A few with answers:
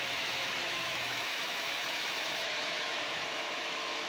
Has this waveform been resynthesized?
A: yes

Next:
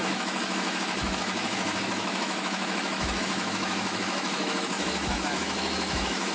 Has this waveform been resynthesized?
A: yes